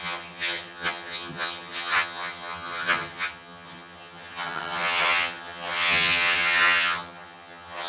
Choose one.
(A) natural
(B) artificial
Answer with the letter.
B